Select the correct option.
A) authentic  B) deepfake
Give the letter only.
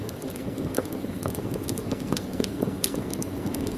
B